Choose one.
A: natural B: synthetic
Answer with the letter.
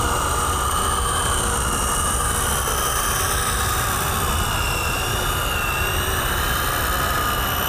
A